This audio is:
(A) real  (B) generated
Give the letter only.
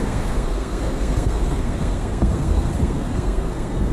B